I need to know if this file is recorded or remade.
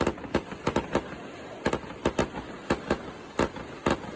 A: recorded